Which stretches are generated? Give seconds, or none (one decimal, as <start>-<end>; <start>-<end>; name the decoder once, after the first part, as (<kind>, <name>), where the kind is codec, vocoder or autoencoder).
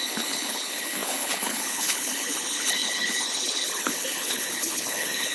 0.0-5.3 (codec, HILCodec)